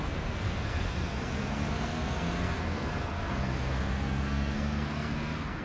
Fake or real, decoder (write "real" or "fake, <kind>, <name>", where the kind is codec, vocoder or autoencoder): fake, codec, SNAC